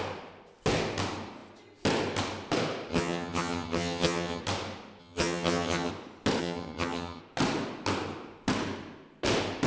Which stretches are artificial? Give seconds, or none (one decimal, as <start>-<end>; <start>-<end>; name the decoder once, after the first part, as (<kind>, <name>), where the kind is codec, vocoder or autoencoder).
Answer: 2.9-4.4 (vocoder, HiFi-GAN); 5.0-5.9; 6.4-7.2